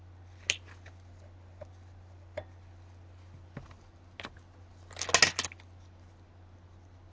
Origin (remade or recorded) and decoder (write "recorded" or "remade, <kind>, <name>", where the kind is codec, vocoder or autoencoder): recorded